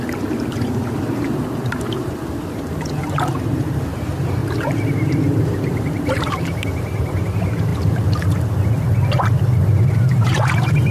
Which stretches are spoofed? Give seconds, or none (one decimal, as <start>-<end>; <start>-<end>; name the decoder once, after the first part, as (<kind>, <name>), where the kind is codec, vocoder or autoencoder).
0.0-4.4 (vocoder, BigVGAN v2); 5.4-7.7; 9.7-10.9